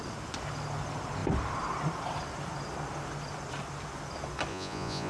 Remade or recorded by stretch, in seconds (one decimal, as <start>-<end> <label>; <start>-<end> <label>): 0.0-4.5 recorded; 4.5-5.1 remade